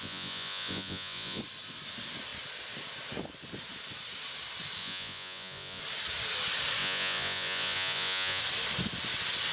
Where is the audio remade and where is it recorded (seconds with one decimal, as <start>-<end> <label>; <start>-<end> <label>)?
0.0-1.4 remade; 1.4-4.8 recorded; 4.8-5.8 remade; 5.8-6.8 recorded; 6.8-8.4 remade; 8.4-9.5 recorded